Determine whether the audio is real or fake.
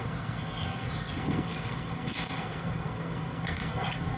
fake